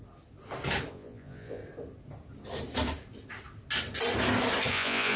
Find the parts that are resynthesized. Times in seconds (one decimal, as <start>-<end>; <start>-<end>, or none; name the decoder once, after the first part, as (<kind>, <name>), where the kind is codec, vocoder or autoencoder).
0.9-1.6 (vocoder, Vocos); 4.7-5.2